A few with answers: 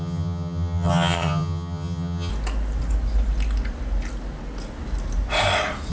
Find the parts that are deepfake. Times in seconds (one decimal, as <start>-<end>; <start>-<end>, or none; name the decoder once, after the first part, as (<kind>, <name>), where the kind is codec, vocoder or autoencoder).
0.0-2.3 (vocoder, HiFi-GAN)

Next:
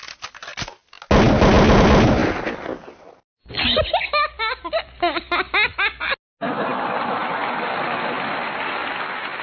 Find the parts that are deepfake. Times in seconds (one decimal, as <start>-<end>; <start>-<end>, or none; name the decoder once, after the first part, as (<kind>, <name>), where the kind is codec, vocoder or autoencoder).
none

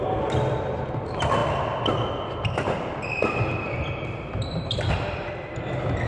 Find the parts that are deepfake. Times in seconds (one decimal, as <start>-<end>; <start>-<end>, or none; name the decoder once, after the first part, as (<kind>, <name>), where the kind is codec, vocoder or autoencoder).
none

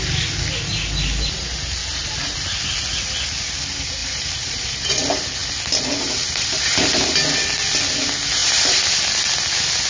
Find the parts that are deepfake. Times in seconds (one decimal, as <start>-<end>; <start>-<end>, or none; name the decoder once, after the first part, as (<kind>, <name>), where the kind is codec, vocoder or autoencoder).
1.8-2.5 (vocoder, BigVGAN v2); 4.0-4.9